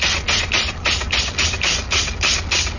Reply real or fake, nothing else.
real